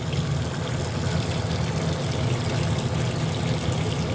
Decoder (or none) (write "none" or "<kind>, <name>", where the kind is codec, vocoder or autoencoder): none